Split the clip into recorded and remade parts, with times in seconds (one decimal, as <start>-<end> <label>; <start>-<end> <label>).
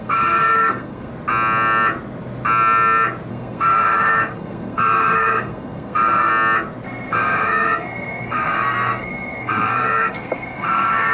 0.0-1.1 remade; 1.1-3.3 recorded; 3.3-6.3 remade; 6.3-7.1 recorded; 7.1-11.1 remade